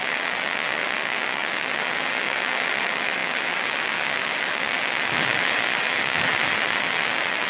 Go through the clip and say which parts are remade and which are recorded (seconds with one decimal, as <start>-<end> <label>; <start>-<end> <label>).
0.0-7.5 remade